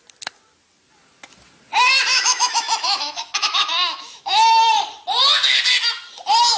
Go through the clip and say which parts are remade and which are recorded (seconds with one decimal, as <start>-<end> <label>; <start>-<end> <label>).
0.0-2.1 recorded; 2.1-4.7 remade; 4.7-6.6 recorded